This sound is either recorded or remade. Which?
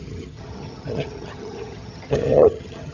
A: remade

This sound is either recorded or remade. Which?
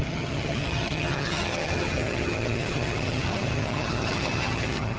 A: remade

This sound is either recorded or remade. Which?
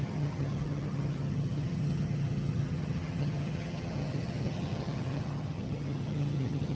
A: remade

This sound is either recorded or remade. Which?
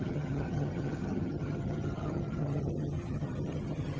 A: remade